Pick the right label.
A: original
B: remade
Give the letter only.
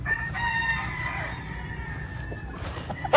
A